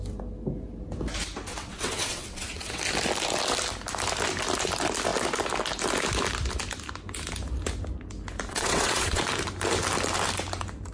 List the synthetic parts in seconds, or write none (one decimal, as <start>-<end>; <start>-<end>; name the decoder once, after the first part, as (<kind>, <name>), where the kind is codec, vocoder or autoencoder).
1.5-2.8 (vocoder, WaveNeXt); 8.5-9.2